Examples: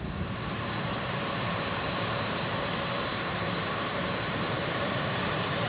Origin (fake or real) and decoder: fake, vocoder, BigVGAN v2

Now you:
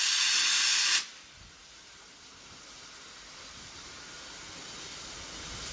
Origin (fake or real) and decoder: real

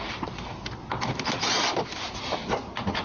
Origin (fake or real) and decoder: real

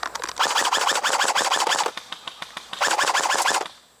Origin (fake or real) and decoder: real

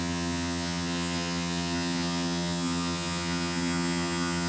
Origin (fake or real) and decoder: fake, vocoder, HiFi-GAN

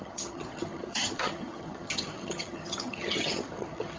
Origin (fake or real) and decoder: fake, vocoder, HiFi-GAN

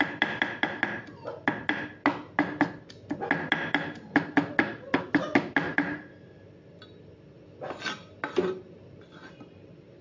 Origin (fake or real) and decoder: real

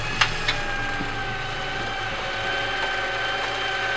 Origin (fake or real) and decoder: real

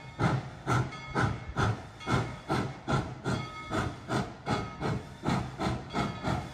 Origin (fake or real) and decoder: real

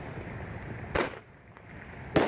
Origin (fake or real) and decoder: real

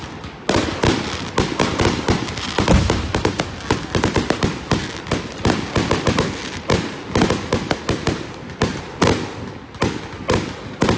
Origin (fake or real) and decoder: real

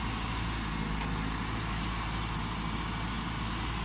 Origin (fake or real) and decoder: real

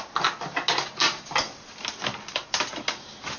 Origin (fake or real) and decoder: real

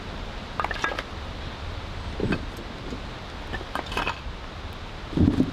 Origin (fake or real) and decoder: real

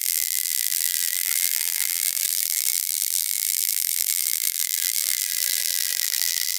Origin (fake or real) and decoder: fake, vocoder, BigVGAN v2